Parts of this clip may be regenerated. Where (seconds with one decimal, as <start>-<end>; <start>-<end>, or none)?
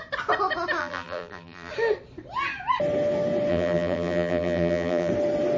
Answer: 0.8-1.7; 3.5-5.1